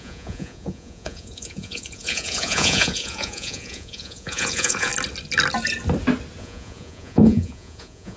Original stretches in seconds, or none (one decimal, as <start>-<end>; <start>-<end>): 4.9-6.4